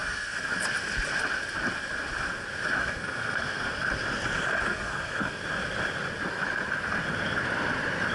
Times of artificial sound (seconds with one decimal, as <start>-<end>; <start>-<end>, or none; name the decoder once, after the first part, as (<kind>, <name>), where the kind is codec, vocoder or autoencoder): 0.0-0.6 (codec, SNAC); 2.8-3.7; 4.7-5.4